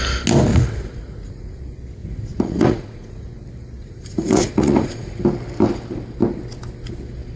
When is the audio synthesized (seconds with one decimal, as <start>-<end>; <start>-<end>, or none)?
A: 0.5-1.6; 2.0-3.2; 3.8-5.2